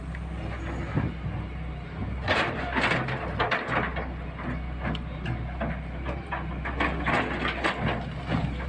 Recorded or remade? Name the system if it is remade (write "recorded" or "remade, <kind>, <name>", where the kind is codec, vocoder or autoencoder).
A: recorded